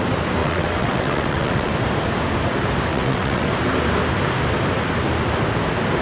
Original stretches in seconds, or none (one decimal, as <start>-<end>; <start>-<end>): 0.0-0.4; 1.7-2.9; 3.5-6.0